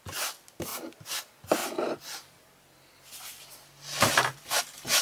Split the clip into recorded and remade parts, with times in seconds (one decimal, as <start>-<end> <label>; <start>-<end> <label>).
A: 0.0-5.0 recorded